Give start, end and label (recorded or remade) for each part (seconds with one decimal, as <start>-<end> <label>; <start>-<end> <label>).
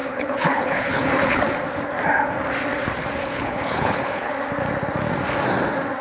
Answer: 0.0-1.4 remade; 1.4-3.2 recorded; 3.2-4.3 remade; 4.3-6.0 recorded